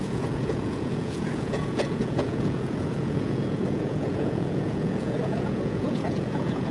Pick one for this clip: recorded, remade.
remade